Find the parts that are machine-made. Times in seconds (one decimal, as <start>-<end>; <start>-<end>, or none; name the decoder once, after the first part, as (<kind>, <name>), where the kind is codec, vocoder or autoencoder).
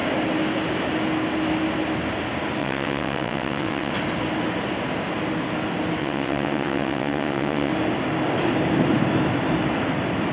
2.6-3.9 (vocoder, WaveNeXt); 6.0-7.7